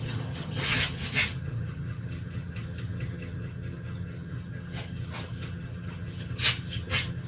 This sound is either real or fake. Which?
fake